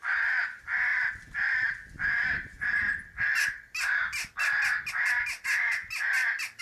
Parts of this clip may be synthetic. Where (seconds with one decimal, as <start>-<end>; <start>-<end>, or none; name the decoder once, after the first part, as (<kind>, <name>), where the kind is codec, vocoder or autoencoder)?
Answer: none